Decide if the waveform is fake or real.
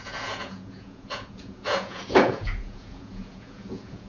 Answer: fake